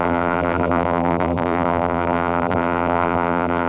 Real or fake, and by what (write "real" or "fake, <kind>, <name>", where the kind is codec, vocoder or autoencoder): fake, vocoder, BigVGAN v2